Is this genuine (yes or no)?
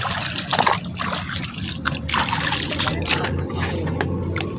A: yes